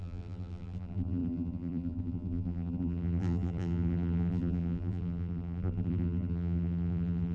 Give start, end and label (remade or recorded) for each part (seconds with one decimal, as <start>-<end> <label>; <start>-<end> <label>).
0.0-7.3 remade